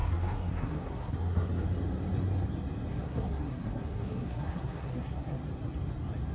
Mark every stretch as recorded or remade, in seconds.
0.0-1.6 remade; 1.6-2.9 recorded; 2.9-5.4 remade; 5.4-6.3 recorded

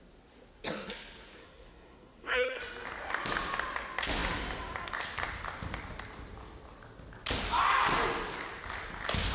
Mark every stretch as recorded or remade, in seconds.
0.0-1.4 recorded; 1.4-2.6 remade; 2.6-9.3 recorded

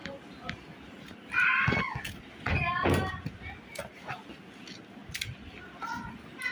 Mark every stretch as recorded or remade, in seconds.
0.0-6.5 recorded

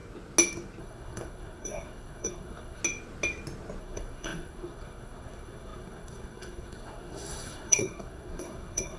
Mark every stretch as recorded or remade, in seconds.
0.0-0.8 recorded; 0.8-2.8 remade; 2.8-3.8 recorded; 3.8-9.0 remade

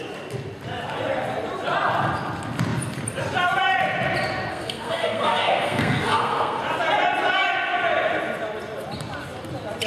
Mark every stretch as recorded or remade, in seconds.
0.0-4.5 recorded; 4.5-6.6 remade; 6.6-9.9 recorded

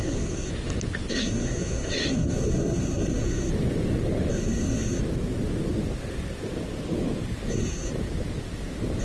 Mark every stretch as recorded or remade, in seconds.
0.0-0.5 remade; 0.5-1.1 recorded; 1.1-3.5 remade; 3.5-4.3 recorded; 4.3-5.0 remade; 5.0-7.5 recorded; 7.5-7.9 remade; 7.9-9.0 recorded

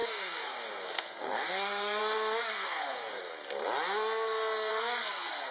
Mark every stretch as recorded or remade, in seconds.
0.0-2.0 remade; 2.0-2.5 recorded; 2.5-3.2 remade; 3.2-4.7 recorded; 4.7-5.5 remade

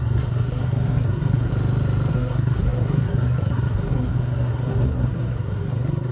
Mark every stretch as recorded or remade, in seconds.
0.0-1.5 remade; 1.5-2.1 recorded; 2.1-6.1 remade